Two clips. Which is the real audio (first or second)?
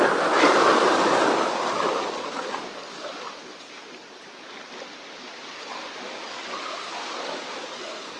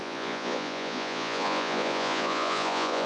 first